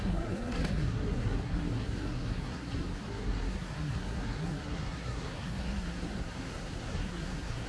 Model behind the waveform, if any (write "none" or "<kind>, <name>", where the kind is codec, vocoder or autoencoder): codec, SNAC